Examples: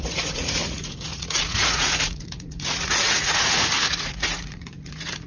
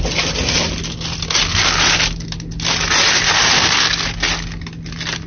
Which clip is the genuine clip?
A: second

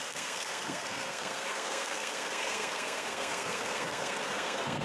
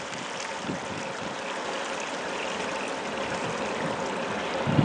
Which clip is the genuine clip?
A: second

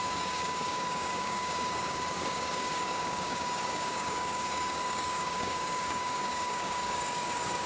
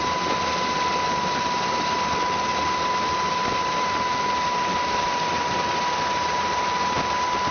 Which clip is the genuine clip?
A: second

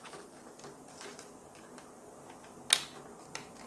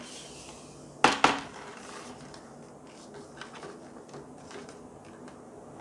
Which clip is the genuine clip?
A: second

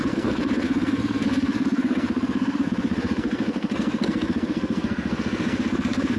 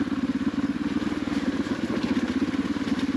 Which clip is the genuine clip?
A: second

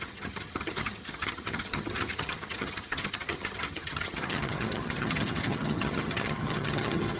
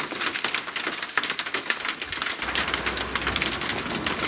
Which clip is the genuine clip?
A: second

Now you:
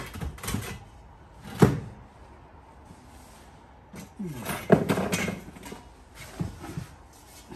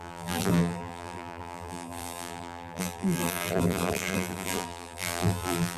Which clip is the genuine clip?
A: first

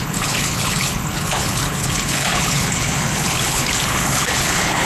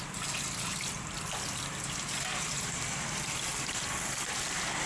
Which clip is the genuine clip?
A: second